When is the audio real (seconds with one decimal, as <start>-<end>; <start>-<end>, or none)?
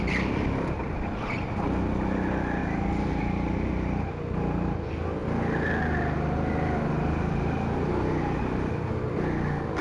0.0-9.8